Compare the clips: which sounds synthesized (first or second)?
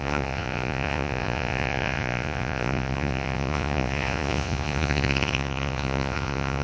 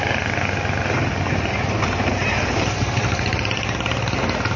first